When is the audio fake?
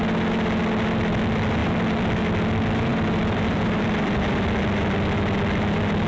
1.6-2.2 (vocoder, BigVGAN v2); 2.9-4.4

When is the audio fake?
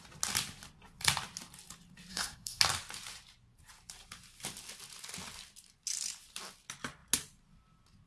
2.1-2.6 (codec, SNAC)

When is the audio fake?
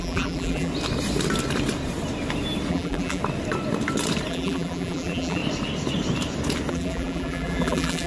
0.0-0.7 (vocoder, BigVGAN v2); 2.7-3.2; 4.3-5.4; 6.7-8.1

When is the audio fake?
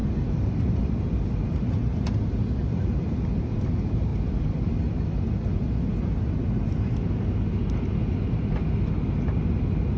0.0-1.9 (vocoder, BigVGAN v2); 2.5-4.1; 8.8-10.0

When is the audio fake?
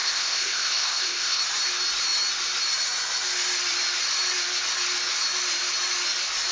0.0-1.4 (codec, ZipCodec)